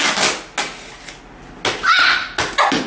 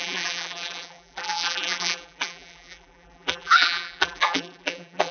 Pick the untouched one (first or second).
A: first